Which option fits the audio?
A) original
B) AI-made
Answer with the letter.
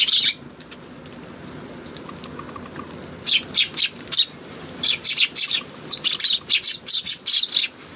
A